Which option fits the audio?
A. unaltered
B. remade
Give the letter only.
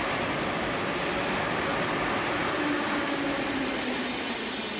A